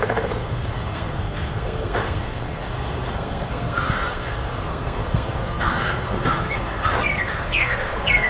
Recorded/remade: remade